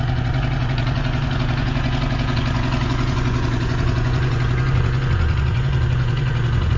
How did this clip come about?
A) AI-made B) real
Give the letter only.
A